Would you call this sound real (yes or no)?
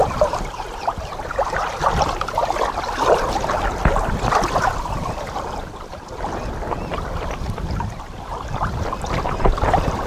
yes